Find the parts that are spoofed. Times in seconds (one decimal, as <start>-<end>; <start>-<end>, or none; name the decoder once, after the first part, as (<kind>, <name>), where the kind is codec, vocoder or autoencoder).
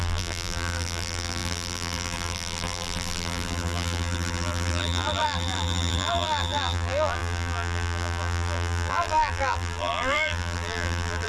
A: 0.0-11.3 (vocoder, BigVGAN v2)